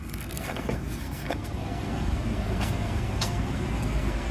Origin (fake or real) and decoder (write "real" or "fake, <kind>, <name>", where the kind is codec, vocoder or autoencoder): fake, codec, SNAC